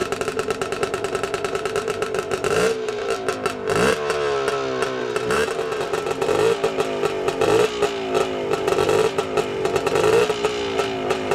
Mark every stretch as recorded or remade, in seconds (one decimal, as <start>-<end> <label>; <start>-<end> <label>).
0.0-3.0 remade; 3.0-5.0 recorded; 5.0-5.5 remade; 5.5-11.3 recorded

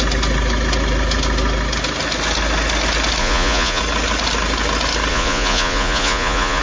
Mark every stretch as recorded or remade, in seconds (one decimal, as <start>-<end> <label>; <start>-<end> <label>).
0.0-3.2 recorded; 3.2-3.8 remade; 3.8-5.1 recorded; 5.1-6.6 remade